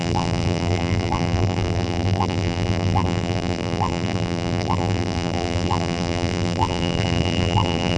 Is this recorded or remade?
remade